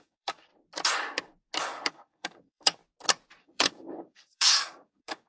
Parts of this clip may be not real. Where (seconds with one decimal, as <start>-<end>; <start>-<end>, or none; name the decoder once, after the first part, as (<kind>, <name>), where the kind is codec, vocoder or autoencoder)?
0.0-0.5 (codec, DAC); 1.6-2.8; 3.4-5.3